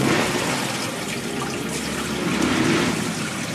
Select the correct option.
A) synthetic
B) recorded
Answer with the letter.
B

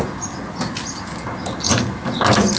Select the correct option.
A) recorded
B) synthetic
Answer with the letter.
A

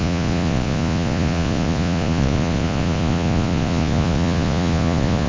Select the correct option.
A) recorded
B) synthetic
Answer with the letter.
B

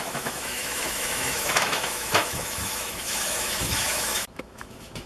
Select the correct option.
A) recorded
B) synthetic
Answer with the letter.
B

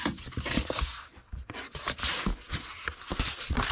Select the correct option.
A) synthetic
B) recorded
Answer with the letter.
B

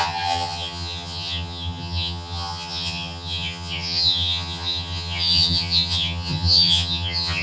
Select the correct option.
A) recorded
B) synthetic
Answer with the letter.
B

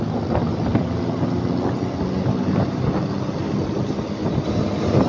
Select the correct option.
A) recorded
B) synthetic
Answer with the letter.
A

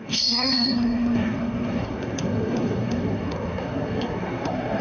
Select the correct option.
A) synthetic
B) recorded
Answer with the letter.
A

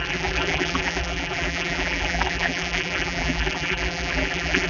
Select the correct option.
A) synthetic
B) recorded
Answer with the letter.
A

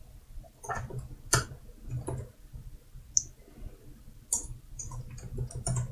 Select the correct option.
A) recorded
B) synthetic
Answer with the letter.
A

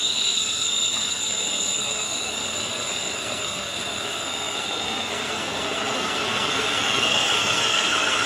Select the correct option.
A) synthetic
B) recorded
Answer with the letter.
A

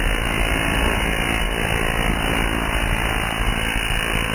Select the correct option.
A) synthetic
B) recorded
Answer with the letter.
B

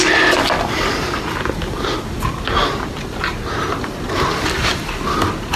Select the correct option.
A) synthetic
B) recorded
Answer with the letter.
B